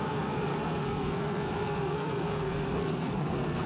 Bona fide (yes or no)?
no